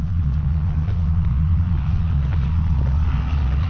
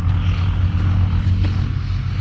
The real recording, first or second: second